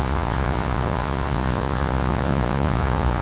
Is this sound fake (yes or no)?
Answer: yes